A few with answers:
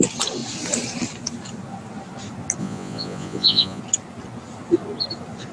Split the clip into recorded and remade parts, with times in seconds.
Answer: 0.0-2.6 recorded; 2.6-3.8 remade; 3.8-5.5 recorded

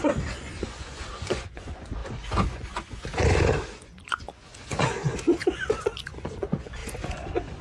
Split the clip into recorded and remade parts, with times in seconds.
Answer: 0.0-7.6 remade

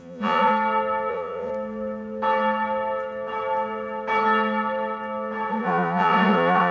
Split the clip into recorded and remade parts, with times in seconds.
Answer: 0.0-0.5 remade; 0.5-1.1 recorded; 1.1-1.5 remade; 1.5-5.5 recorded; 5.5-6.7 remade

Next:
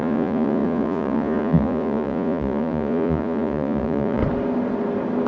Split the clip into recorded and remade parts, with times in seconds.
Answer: 0.0-4.2 remade; 4.2-5.3 recorded

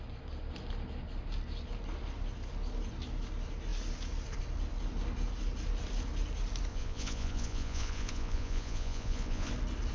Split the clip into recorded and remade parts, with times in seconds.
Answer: 0.0-6.7 recorded; 6.7-9.5 remade; 9.5-9.9 recorded

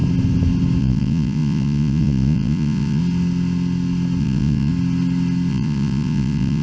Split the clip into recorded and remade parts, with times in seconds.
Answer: 0.0-0.8 recorded; 0.8-3.0 remade; 3.0-4.2 recorded; 4.2-4.7 remade; 4.7-5.5 recorded; 5.5-6.6 remade

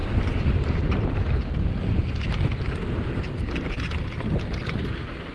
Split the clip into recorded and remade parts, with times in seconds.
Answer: 0.0-5.3 recorded